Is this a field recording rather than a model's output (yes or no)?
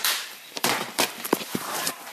no